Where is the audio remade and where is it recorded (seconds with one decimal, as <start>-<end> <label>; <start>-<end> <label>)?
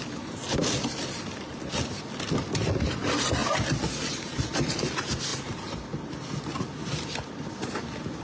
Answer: 0.0-8.2 recorded